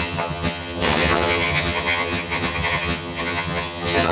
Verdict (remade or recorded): remade